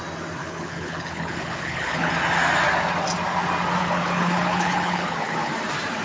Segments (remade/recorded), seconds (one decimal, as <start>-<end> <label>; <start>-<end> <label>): 0.0-0.4 recorded; 0.4-2.1 remade; 2.1-3.8 recorded; 3.8-5.5 remade; 5.5-6.0 recorded